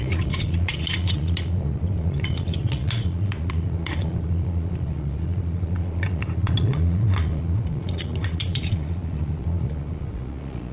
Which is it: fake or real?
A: fake